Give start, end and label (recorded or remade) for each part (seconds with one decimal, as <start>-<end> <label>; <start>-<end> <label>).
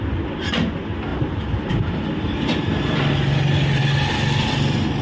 0.0-5.0 recorded